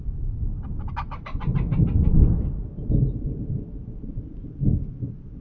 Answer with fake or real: fake